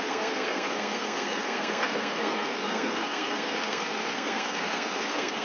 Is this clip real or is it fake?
fake